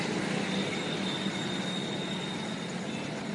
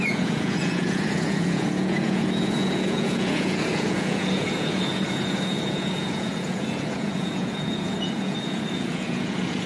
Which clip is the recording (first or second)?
first